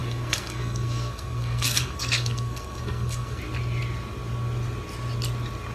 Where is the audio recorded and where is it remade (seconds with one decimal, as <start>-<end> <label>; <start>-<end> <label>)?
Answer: 0.0-3.4 remade; 3.4-5.7 recorded